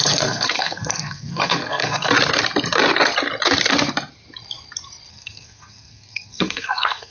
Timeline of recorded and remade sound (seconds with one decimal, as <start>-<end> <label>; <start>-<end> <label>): 0.0-2.1 remade; 2.1-5.1 recorded; 5.1-7.1 remade